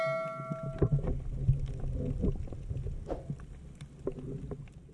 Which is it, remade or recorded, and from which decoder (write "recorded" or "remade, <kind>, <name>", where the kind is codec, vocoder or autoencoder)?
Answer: recorded